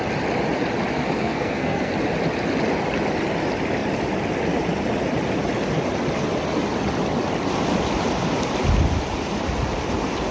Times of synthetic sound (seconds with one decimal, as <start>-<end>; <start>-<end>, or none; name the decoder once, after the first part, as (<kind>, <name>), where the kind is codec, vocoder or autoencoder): 1.0-1.9 (codec, SNAC)